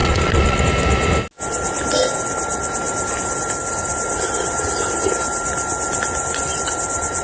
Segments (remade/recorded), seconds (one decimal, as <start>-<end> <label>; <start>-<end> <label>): 0.0-0.6 remade; 0.6-7.2 recorded